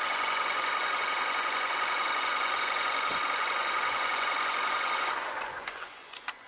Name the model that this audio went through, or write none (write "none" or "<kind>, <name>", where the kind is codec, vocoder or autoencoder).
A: vocoder, Vocos